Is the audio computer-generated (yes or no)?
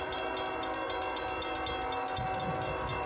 no